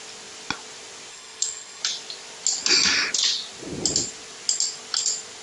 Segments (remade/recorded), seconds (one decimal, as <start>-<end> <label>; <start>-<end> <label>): 0.0-1.1 recorded; 1.1-1.8 remade; 1.8-5.4 recorded